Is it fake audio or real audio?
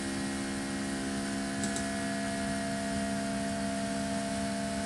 real